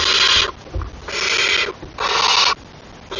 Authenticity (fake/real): real